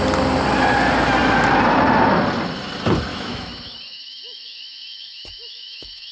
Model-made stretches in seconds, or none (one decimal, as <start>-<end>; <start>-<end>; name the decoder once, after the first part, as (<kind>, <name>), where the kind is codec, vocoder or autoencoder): 3.1-6.1 (autoencoder, DAC-VAE)